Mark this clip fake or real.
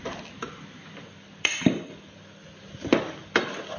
real